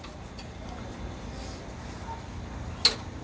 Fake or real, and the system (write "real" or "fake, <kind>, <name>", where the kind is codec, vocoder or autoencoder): real